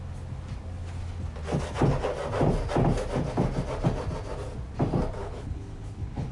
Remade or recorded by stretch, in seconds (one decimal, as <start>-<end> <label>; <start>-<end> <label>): 0.0-5.2 recorded; 5.2-6.3 remade